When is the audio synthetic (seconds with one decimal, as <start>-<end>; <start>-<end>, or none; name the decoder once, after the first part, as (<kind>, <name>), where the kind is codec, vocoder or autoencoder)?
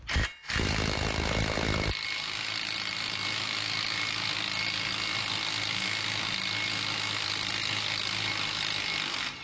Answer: none